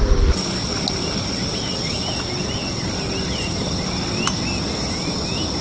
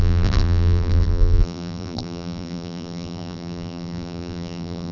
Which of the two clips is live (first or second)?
first